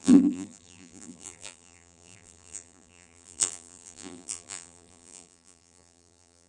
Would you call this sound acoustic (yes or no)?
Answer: no